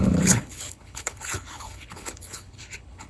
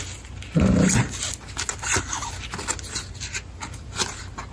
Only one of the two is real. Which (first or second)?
second